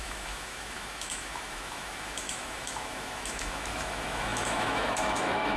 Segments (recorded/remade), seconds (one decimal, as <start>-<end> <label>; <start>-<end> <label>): 0.0-5.6 remade